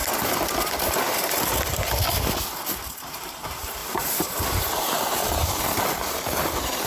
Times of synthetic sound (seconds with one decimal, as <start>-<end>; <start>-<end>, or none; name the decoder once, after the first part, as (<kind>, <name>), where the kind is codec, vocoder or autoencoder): 2.9-6.9 (vocoder, BigVGAN v2)